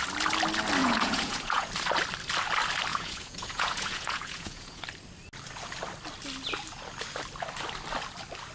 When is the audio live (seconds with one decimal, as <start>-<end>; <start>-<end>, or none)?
0.0-0.8; 1.7-2.9; 4.8-8.5